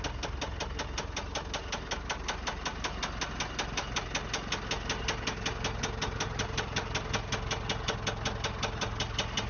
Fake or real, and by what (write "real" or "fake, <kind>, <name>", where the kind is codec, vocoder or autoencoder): real